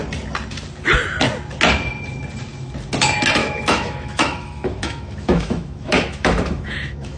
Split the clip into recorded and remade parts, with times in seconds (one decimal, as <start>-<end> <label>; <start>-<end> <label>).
0.0-3.4 recorded; 3.4-7.2 remade